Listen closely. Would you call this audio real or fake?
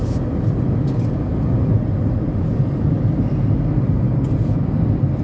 fake